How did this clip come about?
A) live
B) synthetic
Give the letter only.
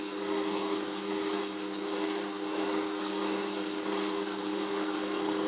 B